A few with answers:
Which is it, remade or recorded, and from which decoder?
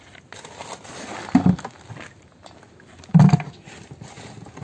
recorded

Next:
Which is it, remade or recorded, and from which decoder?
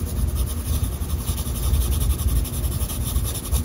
recorded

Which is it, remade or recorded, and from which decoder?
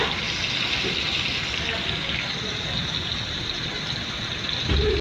recorded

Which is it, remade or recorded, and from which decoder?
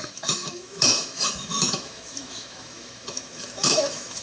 remade, autoencoder, DAC-VAE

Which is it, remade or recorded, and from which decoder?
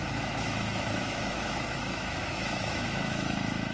remade, autoencoder, DAC-VAE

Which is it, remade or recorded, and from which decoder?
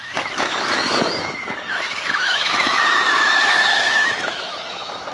remade, autoencoder, DAC-VAE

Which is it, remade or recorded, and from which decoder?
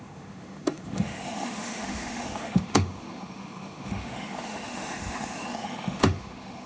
remade, autoencoder, DAC-VAE